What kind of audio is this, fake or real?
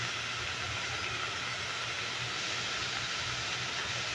real